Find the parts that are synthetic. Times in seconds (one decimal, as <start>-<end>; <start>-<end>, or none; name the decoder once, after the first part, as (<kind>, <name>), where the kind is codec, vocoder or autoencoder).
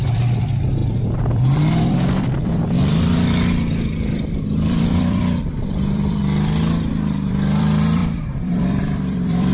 0.0-6.2 (vocoder, BigVGAN v2); 6.9-9.5